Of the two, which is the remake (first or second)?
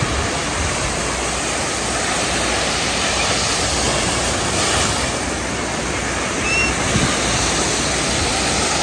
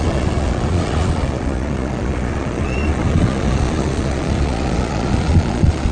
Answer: second